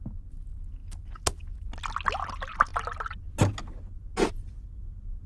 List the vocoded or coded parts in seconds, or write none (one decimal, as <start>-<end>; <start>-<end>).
none